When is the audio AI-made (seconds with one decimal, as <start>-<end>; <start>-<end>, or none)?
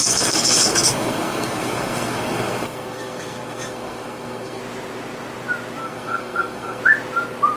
0.0-4.6; 5.8-6.8